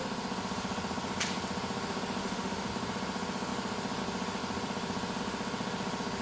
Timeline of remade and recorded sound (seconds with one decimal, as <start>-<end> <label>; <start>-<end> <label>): 0.0-2.2 recorded; 2.2-2.7 remade; 2.7-6.2 recorded